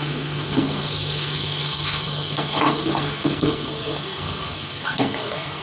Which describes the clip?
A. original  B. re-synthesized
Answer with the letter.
B